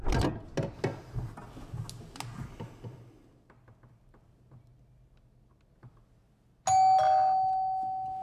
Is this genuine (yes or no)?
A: yes